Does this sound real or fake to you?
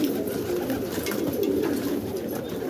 real